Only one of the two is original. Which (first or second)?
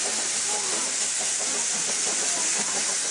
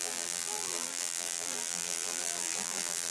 first